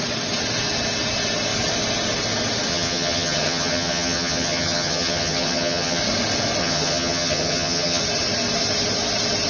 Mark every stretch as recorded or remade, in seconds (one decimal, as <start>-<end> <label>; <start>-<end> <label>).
0.0-2.7 recorded; 2.7-6.0 remade; 6.0-6.6 recorded; 6.6-8.0 remade; 8.0-9.5 recorded